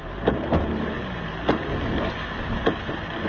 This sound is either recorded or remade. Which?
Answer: recorded